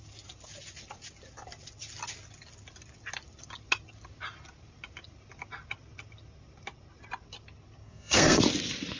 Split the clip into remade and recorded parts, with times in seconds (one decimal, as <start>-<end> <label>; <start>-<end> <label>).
0.0-7.8 recorded; 7.8-8.4 remade; 8.4-9.0 recorded